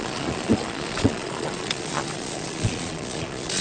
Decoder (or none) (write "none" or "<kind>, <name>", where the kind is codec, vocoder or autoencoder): vocoder, Vocos